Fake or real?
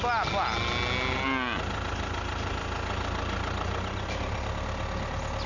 real